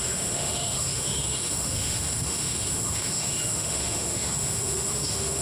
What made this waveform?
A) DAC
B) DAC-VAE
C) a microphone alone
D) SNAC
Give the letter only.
B